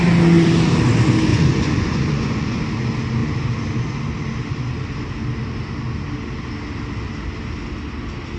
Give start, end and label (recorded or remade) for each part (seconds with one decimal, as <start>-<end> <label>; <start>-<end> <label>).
0.0-1.3 recorded; 1.3-2.6 remade; 2.6-8.4 recorded